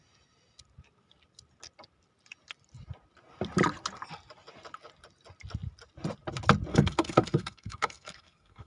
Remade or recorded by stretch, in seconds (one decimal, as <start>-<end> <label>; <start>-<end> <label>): 0.0-6.7 recorded; 6.7-8.7 remade